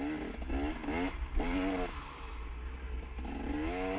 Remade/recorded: recorded